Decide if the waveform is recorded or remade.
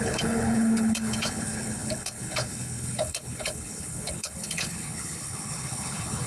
remade